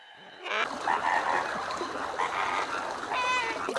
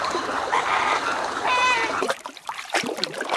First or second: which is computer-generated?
second